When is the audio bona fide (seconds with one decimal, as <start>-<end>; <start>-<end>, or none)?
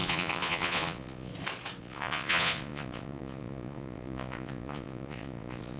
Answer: 1.3-1.8